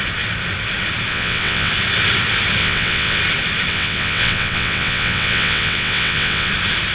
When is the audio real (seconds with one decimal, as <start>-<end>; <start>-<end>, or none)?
0.0-1.1; 1.7-2.6; 3.2-3.7; 6.5-6.9